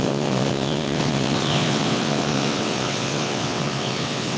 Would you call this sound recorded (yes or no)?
no